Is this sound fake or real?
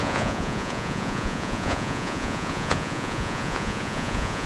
fake